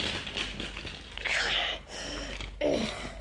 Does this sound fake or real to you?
real